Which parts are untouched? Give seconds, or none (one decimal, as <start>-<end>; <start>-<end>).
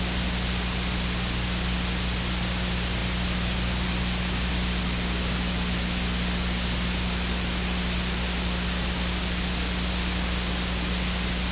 0.0-11.5